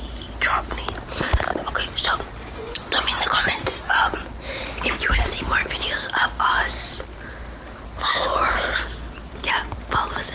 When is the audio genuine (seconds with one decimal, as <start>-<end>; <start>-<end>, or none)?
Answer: 0.0-2.6; 4.1-10.3

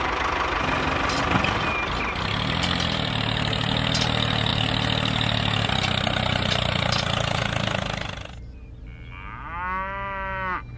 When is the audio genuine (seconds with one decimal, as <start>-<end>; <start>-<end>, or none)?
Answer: 0.0-10.8

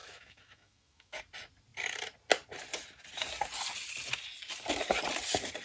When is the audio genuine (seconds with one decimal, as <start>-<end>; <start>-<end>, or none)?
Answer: 1.2-5.6

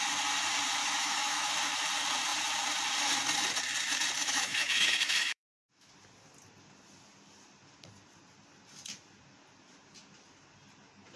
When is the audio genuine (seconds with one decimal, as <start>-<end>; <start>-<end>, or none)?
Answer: 0.0-0.8; 1.5-4.2; 5.9-11.2